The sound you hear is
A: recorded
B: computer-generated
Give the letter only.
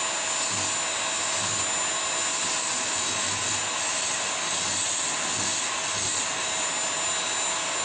A